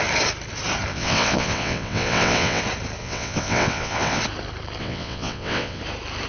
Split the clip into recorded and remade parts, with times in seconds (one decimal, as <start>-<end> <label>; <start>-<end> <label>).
0.0-0.9 recorded; 0.9-2.6 remade; 2.6-3.0 recorded; 3.0-4.2 remade; 4.2-4.8 recorded; 4.8-5.8 remade; 5.8-6.3 recorded

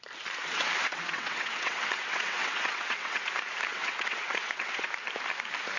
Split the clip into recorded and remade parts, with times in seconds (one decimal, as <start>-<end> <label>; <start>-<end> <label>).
0.0-0.4 recorded; 0.4-3.3 remade; 3.3-3.7 recorded; 3.7-4.9 remade; 4.9-5.8 recorded

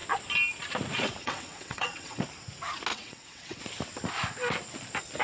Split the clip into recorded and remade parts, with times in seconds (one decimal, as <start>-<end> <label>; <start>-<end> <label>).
0.0-1.2 recorded; 1.2-2.2 remade; 2.2-2.9 recorded; 2.9-3.6 remade; 3.6-5.2 recorded

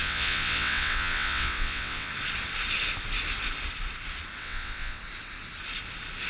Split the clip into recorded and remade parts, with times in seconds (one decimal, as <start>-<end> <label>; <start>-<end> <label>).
0.0-2.1 remade; 2.1-4.4 recorded; 4.4-5.0 remade; 5.0-6.3 recorded

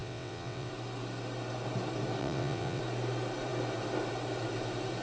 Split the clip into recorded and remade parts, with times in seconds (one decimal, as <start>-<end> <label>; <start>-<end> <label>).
0.0-0.7 remade; 0.7-2.2 recorded; 2.2-2.8 remade; 2.8-5.0 recorded

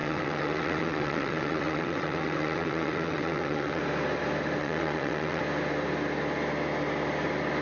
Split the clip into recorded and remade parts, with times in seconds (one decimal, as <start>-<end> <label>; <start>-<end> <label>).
0.0-3.8 remade; 3.8-4.6 recorded; 4.6-5.4 remade; 5.4-7.6 recorded

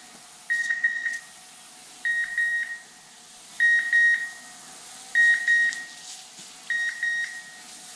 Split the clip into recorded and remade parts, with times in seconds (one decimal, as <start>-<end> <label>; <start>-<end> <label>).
0.0-0.6 recorded; 0.6-1.2 remade; 1.2-8.0 recorded

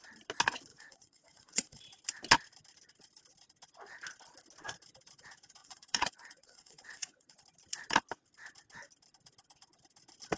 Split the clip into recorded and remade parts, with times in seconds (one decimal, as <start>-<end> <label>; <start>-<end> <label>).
0.0-0.7 recorded; 0.7-1.8 remade; 1.8-5.6 recorded; 5.6-7.4 remade; 7.4-10.4 recorded